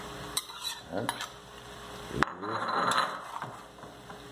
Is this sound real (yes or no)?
yes